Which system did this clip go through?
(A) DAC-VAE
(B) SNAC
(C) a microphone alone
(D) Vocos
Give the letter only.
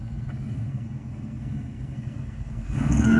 B